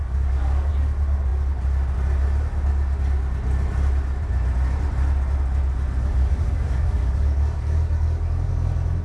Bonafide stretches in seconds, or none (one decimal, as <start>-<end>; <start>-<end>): 0.7-6.0; 8.5-9.0